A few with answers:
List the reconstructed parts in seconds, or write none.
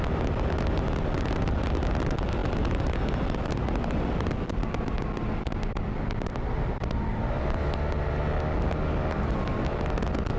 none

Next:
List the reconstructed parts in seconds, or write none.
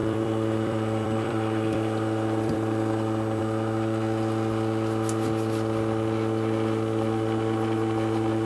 0.0-3.4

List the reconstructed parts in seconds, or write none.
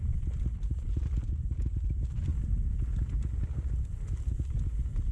none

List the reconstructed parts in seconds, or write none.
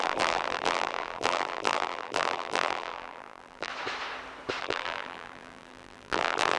0.0-3.7; 4.6-6.6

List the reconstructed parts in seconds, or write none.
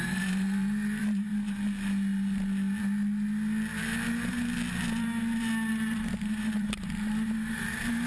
0.0-1.3; 5.7-8.1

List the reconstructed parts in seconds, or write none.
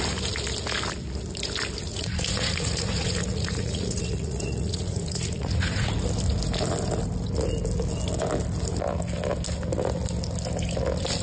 1.8-5.9